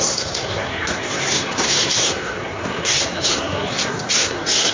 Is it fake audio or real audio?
fake